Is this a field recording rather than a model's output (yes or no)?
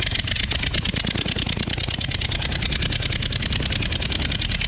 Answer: yes